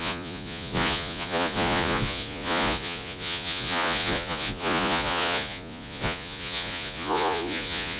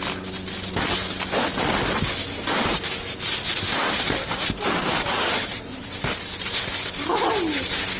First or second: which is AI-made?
first